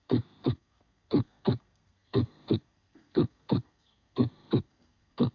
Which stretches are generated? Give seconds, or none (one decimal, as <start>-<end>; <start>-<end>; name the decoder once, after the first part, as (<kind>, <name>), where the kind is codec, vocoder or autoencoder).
0.0-5.3 (codec, SNAC)